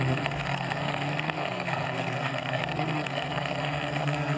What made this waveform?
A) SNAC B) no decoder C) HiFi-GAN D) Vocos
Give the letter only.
A